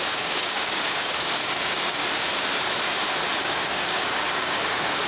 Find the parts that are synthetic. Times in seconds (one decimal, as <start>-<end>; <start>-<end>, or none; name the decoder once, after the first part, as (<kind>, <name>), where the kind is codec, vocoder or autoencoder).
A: 0.0-2.0 (codec, DAC); 3.4-5.1